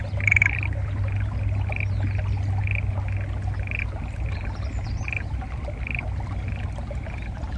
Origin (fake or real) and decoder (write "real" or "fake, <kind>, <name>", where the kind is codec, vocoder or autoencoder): real